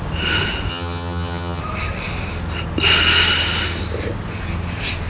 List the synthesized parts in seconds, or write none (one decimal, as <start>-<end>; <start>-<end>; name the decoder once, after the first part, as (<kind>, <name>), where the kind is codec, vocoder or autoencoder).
0.7-1.6 (vocoder, HiFi-GAN)

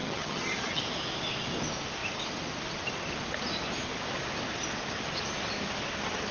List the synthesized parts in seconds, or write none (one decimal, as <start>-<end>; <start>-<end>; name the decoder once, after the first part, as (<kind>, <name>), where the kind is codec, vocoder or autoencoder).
0.0-0.8 (vocoder, HiFi-GAN)

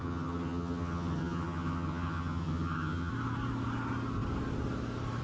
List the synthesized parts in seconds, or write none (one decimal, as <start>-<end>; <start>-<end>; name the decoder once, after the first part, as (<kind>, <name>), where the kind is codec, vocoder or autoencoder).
0.0-3.1 (vocoder, HiFi-GAN)

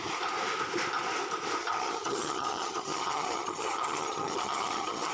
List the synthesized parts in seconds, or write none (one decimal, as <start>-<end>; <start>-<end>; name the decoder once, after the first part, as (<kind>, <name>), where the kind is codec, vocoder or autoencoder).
1.6-5.1 (vocoder, HiFi-GAN)